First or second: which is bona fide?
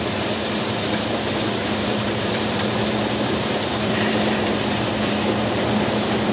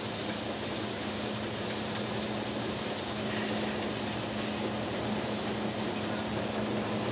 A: second